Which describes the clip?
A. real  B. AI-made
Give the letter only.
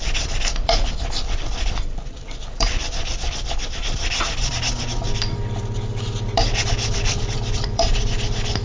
B